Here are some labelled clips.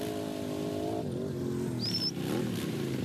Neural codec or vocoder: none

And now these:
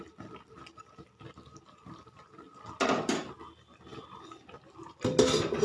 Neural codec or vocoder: none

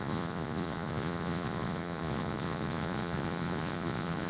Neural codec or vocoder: vocoder, Vocos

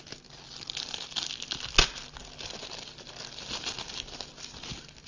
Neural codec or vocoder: none